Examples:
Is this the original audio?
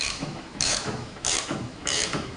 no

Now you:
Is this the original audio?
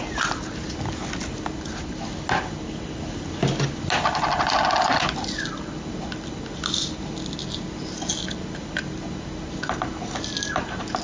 yes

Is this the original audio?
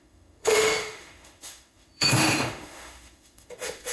no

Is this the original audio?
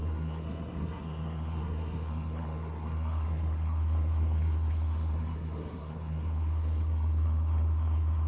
no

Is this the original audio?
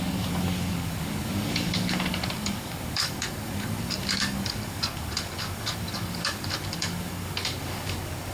no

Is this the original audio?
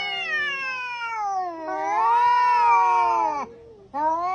yes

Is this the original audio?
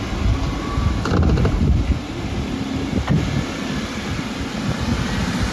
yes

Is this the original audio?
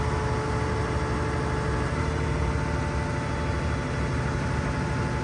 yes